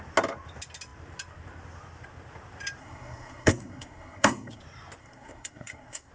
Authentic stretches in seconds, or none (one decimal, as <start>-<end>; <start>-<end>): 0.0-2.8; 4.6-5.0